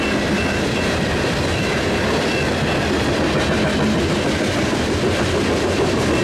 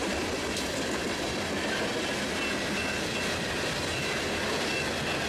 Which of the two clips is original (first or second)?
second